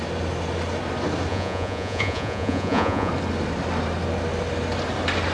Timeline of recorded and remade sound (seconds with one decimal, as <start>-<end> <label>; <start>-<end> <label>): 0.0-1.3 recorded; 1.3-3.1 remade; 3.1-5.3 recorded

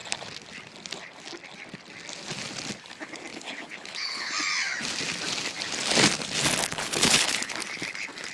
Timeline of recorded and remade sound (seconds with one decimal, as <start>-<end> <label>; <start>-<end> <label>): 0.0-3.3 recorded; 3.3-4.3 remade; 4.3-6.7 recorded; 6.7-7.5 remade; 7.5-8.3 recorded

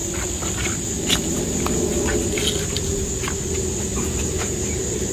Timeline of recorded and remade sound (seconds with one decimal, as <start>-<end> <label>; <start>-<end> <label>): 0.0-5.1 recorded